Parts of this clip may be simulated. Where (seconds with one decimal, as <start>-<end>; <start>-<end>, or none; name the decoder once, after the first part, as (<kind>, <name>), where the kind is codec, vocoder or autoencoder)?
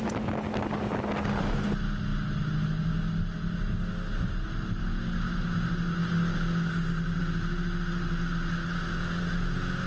none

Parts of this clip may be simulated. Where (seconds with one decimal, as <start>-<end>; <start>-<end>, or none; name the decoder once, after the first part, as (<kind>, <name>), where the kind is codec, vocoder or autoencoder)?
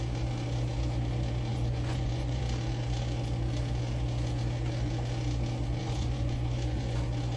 1.5-2.4 (vocoder, Vocos); 5.8-7.0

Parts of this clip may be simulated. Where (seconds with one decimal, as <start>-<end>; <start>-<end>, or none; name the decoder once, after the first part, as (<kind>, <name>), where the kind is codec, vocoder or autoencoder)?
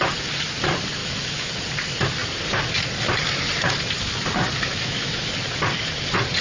1.0-1.5 (autoencoder, DAC-VAE); 4.7-5.2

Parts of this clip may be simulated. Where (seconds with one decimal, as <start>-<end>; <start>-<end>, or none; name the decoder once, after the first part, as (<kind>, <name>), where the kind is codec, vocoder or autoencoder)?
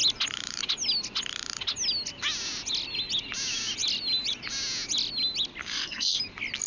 5.6-6.2 (codec, SNAC)